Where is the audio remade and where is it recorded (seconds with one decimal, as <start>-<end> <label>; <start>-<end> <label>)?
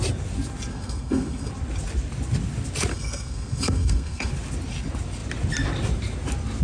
0.0-0.7 recorded; 0.7-1.5 remade; 1.5-2.9 recorded; 2.9-4.3 remade; 4.3-6.6 recorded